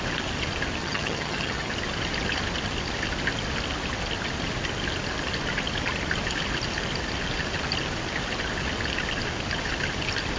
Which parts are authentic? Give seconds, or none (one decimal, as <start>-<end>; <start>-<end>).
0.0-0.8; 1.7-10.4